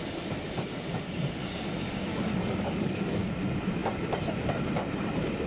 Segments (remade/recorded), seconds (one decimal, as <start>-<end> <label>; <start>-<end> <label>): 0.0-2.1 recorded; 2.1-3.3 remade; 3.3-5.5 recorded